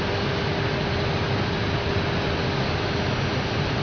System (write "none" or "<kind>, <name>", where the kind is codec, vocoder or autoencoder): none